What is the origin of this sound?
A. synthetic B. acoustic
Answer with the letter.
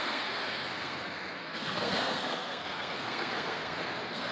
A